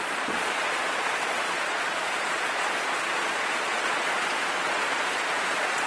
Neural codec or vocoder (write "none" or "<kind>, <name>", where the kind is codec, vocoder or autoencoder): vocoder, Vocos